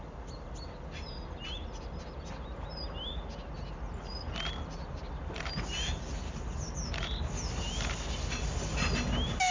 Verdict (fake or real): real